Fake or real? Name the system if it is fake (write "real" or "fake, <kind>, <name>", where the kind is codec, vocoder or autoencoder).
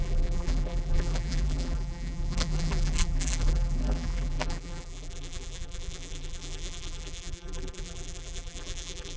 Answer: fake, vocoder, BigVGAN v2